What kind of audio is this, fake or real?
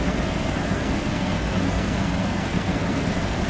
fake